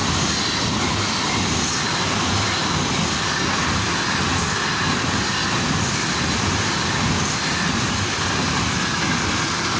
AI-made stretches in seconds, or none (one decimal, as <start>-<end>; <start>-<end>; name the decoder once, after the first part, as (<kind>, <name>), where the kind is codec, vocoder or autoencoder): none